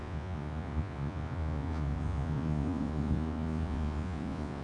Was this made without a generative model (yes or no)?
no